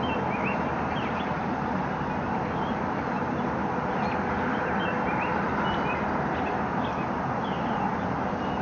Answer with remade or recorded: recorded